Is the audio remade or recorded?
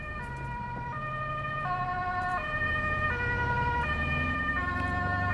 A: recorded